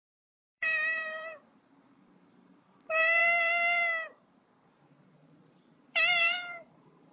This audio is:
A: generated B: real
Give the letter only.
A